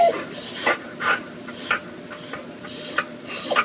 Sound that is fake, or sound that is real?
real